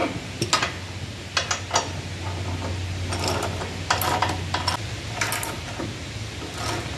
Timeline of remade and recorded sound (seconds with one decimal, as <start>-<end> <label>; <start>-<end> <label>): 0.0-7.0 recorded